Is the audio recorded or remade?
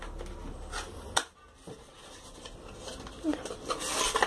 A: recorded